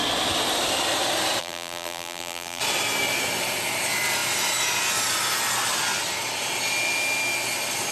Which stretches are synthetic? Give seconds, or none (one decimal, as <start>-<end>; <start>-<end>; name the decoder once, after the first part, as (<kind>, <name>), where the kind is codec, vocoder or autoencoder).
1.4-2.6 (vocoder, BigVGAN v2)